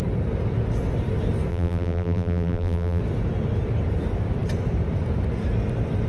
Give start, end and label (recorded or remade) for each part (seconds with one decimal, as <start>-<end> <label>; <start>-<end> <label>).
0.0-1.5 recorded; 1.5-3.0 remade; 3.0-6.1 recorded